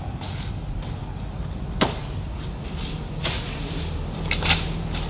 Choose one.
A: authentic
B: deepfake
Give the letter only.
A